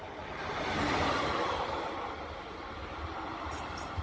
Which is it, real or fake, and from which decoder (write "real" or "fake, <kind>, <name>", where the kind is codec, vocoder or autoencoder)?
real